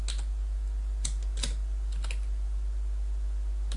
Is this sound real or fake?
real